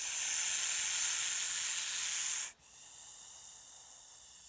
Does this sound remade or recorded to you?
recorded